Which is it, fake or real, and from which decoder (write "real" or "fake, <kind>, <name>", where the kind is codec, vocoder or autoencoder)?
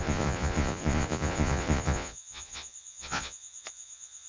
fake, vocoder, Vocos